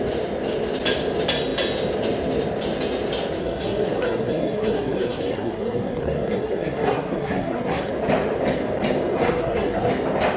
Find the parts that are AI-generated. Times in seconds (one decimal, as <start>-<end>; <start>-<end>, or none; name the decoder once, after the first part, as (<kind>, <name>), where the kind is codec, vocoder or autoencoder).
3.4-7.9 (codec, SNAC); 9.1-9.9